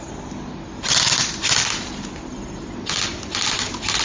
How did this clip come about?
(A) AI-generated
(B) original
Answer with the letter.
B